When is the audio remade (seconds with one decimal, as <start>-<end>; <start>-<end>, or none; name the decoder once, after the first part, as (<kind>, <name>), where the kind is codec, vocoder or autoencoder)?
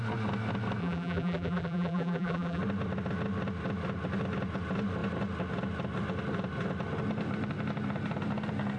0.8-2.6 (vocoder, BigVGAN v2)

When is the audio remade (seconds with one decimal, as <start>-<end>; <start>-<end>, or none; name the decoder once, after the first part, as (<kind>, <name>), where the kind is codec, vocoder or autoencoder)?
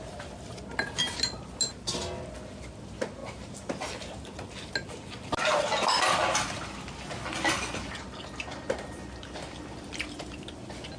none